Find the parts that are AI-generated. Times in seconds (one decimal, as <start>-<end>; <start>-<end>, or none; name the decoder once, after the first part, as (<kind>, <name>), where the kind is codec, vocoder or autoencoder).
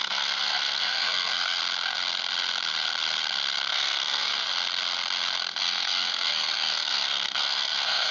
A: 0.0-1.6 (codec, SNAC); 3.7-4.3; 5.6-8.1